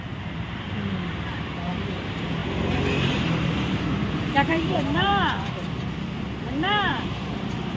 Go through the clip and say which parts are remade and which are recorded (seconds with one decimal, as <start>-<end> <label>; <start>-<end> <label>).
0.0-2.4 remade; 2.4-3.1 recorded; 3.1-5.1 remade; 5.1-6.9 recorded; 6.9-7.8 remade